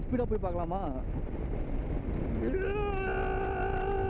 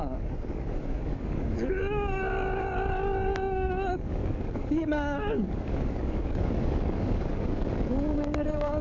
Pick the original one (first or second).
first